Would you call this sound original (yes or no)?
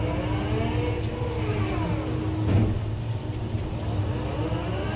yes